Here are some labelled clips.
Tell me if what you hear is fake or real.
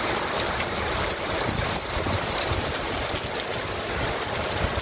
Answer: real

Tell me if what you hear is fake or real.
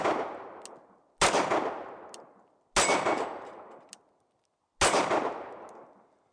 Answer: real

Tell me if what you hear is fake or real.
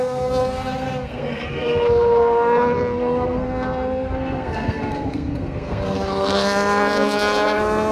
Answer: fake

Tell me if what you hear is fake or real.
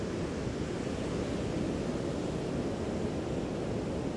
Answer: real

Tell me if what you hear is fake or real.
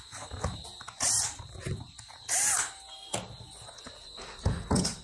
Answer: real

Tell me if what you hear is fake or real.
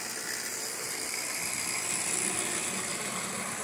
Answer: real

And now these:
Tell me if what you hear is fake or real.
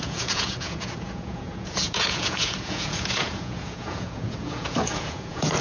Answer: fake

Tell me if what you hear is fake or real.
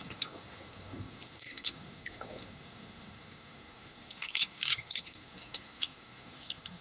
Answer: fake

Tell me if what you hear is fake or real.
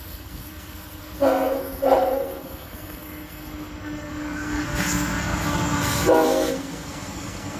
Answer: fake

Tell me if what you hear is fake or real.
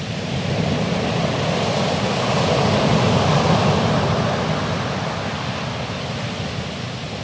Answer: real